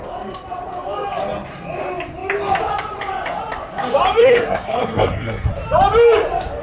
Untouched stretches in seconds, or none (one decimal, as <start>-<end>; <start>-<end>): 0.0-4.2; 5.5-6.6